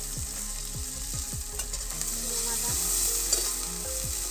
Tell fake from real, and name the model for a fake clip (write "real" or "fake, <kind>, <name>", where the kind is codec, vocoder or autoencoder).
real